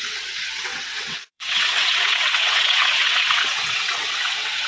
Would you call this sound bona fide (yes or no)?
no